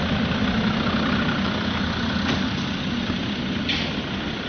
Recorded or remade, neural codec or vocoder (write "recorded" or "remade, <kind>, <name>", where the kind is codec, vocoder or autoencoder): recorded